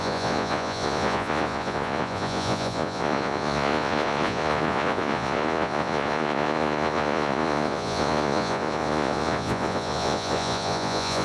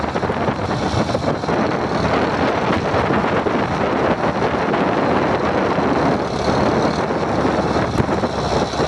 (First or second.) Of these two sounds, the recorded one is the second